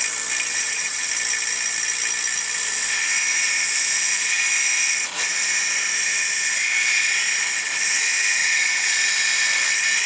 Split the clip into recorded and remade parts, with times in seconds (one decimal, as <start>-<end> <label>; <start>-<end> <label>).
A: 0.0-0.5 recorded; 0.5-1.1 remade; 1.1-8.4 recorded; 8.4-9.1 remade; 9.1-10.1 recorded